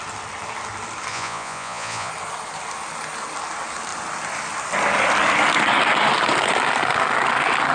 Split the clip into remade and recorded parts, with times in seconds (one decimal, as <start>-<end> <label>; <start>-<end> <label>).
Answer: 0.0-1.1 recorded; 1.1-2.1 remade; 2.1-7.7 recorded